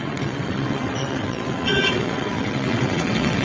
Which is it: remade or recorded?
remade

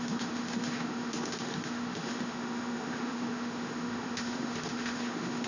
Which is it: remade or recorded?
remade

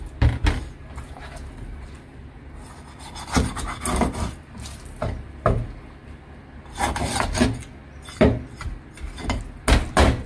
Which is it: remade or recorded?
recorded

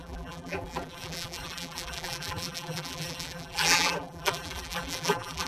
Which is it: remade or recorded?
remade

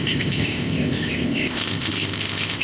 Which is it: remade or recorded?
remade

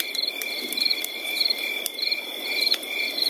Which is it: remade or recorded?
remade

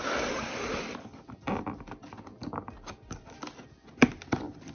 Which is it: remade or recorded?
recorded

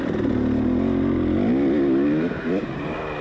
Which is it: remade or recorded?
recorded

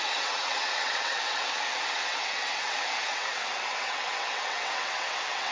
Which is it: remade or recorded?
remade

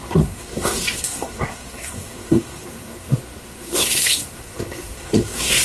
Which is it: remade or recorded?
remade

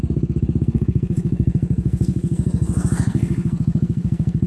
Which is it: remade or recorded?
remade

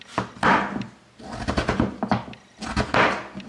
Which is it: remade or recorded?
recorded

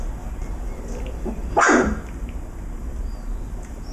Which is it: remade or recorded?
recorded